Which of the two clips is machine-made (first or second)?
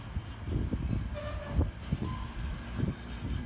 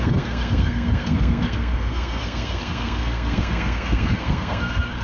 second